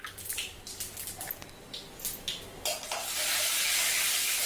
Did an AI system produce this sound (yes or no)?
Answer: no